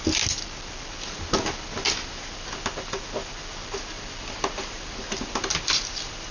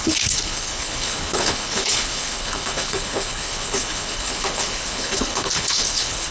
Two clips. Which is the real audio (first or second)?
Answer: first